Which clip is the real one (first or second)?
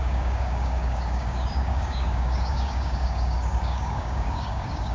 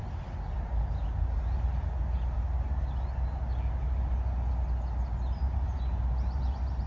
second